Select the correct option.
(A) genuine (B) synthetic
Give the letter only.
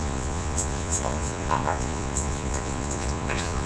B